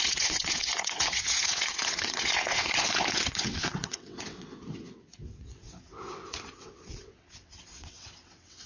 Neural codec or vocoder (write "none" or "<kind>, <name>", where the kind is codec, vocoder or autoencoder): vocoder, WaveNeXt